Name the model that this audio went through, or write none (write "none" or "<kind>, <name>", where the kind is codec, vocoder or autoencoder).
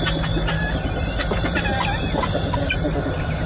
none